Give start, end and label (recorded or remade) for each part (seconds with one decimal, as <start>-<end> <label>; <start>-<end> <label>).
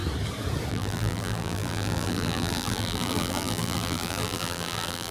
0.0-0.7 recorded; 0.7-5.1 remade